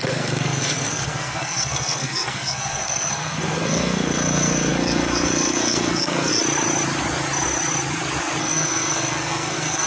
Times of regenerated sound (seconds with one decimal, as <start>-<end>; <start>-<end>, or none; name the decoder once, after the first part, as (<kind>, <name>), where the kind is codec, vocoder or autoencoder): 0.0-6.3 (codec, SNAC); 8.4-9.9